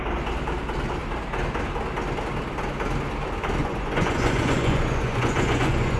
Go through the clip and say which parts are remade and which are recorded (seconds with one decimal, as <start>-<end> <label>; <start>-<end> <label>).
0.0-3.6 recorded; 3.6-6.0 remade